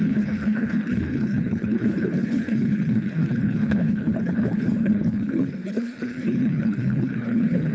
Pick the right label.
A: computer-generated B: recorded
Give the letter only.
A